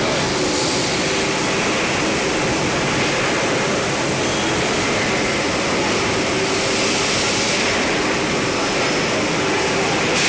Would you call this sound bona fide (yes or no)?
yes